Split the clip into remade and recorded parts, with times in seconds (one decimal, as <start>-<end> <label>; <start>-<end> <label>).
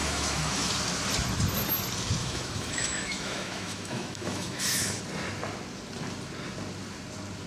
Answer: 0.0-0.7 remade; 0.7-2.2 recorded; 2.2-5.0 remade; 5.0-7.5 recorded